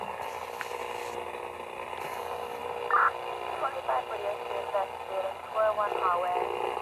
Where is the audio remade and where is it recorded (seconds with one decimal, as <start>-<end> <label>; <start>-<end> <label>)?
0.0-6.8 recorded